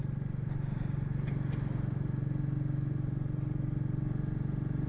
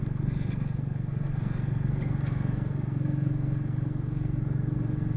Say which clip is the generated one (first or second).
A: second